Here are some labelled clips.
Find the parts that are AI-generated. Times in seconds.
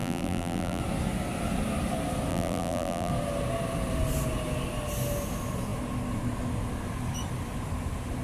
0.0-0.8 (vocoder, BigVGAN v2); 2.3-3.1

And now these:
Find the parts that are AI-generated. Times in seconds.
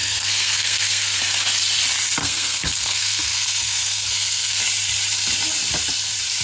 0.0-1.2 (codec, SNAC); 2.2-4.6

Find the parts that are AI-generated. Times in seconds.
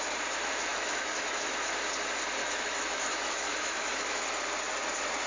0.7-1.5 (autoencoder, DAC-VAE); 2.4-4.2